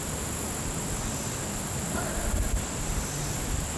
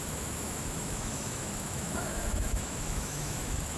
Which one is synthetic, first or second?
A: second